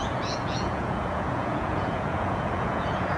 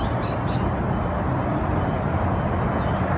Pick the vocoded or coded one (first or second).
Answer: first